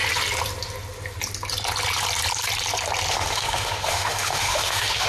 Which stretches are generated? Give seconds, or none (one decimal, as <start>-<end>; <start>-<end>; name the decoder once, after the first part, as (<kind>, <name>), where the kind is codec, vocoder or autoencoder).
3.1-5.1 (autoencoder, DAC-VAE)

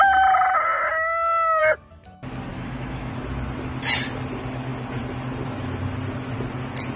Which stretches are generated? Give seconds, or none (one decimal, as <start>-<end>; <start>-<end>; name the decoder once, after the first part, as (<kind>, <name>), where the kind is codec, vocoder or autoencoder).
2.5-3.1 (autoencoder, DAC-VAE)